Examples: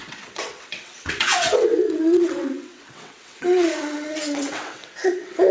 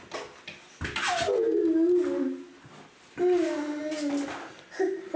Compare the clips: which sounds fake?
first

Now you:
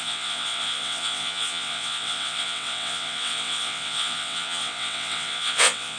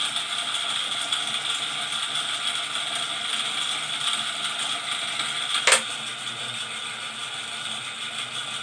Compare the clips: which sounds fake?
first